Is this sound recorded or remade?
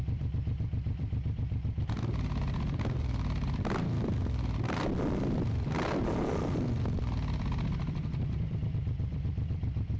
remade